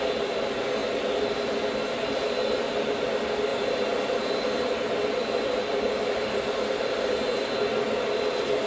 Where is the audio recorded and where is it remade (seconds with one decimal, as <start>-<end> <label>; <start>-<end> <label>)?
0.0-3.5 recorded; 3.5-7.5 remade; 7.5-8.7 recorded